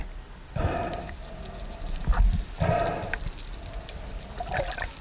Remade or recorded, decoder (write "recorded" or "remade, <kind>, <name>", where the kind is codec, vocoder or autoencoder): recorded